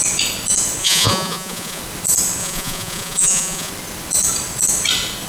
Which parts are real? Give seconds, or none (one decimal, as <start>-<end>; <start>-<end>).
0.0-0.8; 1.8-2.4; 3.7-5.3